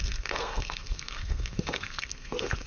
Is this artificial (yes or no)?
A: yes